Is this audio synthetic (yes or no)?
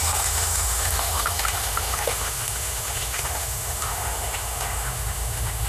yes